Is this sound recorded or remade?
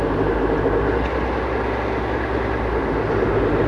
recorded